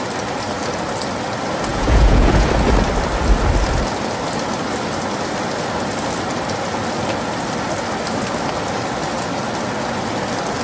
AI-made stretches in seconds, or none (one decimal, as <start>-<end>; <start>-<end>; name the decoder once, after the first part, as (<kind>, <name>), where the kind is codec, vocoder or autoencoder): 1.7-2.5 (vocoder, Vocos)